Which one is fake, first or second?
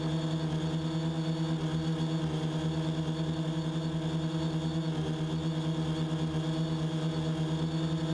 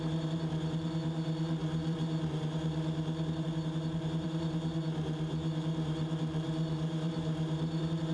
second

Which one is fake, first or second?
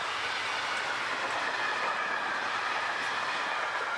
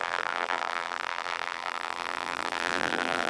second